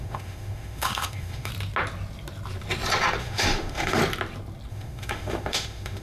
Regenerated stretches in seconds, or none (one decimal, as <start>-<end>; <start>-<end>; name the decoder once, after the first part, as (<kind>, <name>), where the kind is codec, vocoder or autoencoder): 0.0-1.5 (autoencoder, DAC-VAE); 3.2-4.0; 4.7-6.0

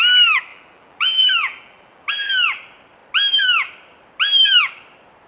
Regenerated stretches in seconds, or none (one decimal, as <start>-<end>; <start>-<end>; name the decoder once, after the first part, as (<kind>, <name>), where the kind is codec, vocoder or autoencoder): 0.5-2.1 (vocoder, BigVGAN v2)

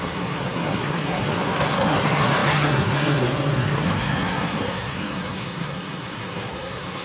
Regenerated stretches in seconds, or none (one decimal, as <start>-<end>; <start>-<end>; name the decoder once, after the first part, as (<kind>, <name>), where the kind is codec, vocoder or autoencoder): 0.0-7.0 (codec, SNAC)

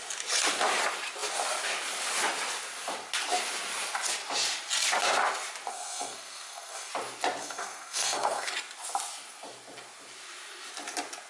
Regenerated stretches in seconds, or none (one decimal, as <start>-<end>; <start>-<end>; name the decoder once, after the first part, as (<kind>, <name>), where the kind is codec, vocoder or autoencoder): 5.7-6.9 (codec, SNAC); 7.4-8.5

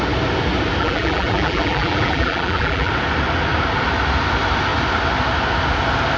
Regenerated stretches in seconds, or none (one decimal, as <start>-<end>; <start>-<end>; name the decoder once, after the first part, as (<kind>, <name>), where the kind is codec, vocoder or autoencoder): 0.8-2.9 (vocoder, BigVGAN v2)

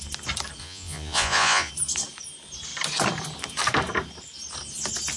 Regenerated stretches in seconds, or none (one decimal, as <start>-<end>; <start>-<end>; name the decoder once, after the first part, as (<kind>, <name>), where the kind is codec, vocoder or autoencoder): 0.6-1.7 (vocoder, Vocos)

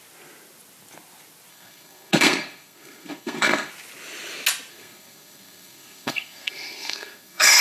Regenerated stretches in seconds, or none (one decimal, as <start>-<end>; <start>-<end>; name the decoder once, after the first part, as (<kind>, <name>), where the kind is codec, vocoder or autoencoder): 1.5-3.7 (codec, SNAC); 4.7-7.6